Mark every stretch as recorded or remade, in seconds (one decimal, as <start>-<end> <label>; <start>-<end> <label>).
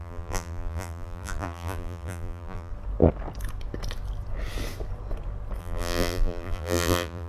0.0-2.7 remade; 2.7-5.6 recorded; 5.6-7.3 remade